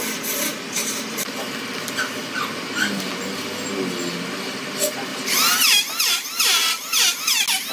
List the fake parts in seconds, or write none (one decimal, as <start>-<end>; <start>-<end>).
5.1-6.1